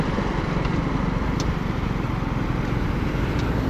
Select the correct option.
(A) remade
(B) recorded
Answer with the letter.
B